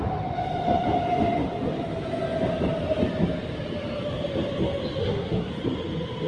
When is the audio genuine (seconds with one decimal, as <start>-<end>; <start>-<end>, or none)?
0.0-5.0; 5.5-6.3